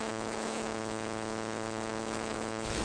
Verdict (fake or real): fake